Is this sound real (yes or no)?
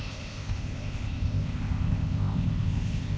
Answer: no